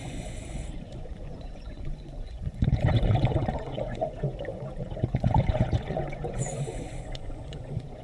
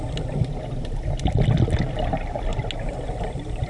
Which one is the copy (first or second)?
first